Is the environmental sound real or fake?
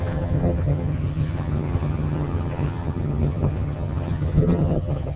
fake